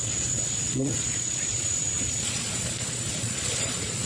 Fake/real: fake